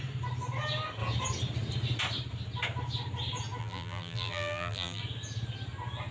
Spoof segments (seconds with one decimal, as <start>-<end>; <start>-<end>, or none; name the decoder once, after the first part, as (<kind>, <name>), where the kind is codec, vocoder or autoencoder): 3.6-5.0 (vocoder, BigVGAN v2)